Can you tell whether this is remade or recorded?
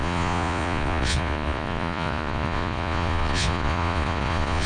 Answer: remade